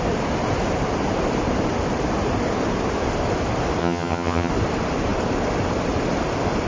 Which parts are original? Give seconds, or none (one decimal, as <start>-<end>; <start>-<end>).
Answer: 0.0-3.8; 4.5-6.7